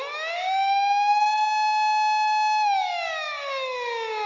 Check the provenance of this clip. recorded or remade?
remade